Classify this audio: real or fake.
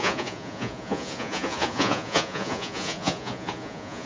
fake